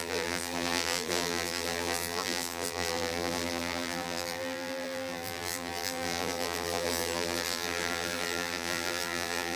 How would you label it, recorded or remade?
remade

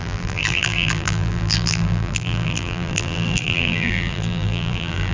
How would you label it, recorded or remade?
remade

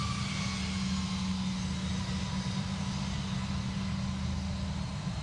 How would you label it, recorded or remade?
recorded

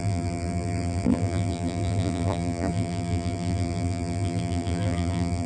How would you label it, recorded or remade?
remade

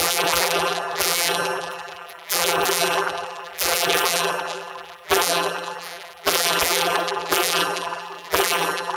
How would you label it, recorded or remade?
remade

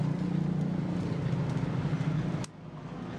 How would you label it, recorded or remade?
recorded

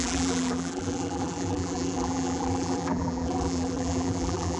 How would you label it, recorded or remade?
remade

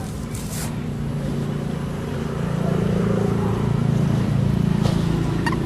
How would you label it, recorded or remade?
remade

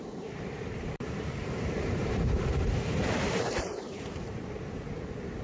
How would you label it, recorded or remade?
remade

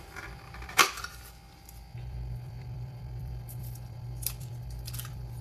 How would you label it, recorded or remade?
remade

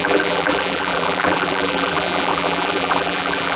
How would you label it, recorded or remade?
remade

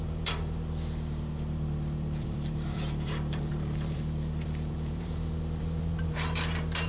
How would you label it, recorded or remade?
remade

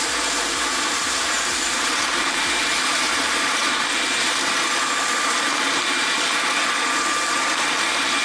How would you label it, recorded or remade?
remade